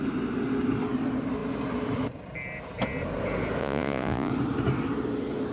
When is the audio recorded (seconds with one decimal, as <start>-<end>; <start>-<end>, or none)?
0.0-3.6; 4.3-5.5